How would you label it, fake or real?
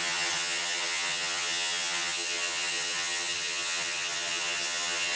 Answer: fake